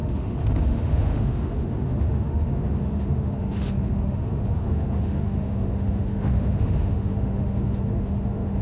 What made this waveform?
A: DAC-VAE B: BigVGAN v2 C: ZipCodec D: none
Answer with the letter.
A